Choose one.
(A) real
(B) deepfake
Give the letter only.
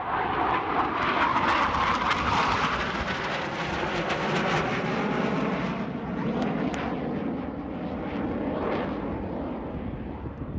A